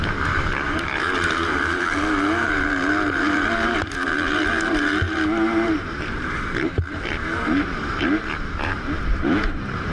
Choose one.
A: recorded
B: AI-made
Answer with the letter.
B